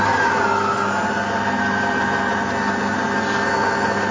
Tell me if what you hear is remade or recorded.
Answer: recorded